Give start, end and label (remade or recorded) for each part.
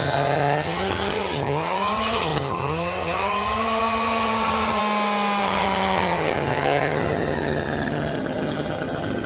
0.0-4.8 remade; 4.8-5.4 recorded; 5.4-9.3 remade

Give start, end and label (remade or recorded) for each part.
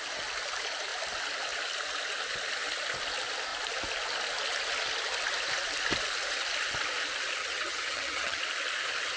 0.0-7.4 recorded; 7.4-8.4 remade; 8.4-9.2 recorded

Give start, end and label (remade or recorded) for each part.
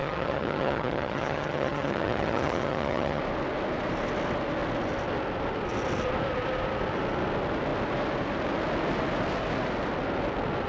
0.0-3.2 remade; 3.2-10.7 recorded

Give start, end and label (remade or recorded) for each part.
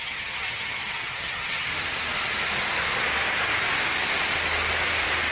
0.0-1.7 remade; 1.7-5.3 recorded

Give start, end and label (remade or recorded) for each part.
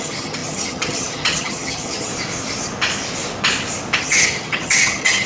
0.0-2.1 remade; 2.1-4.0 recorded; 4.0-5.3 remade